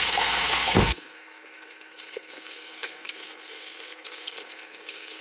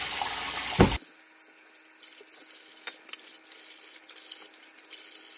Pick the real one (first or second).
second